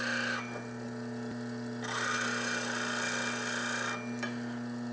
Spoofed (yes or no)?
no